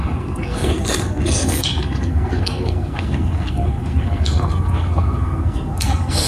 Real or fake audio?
fake